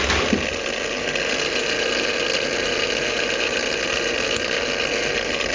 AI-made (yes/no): no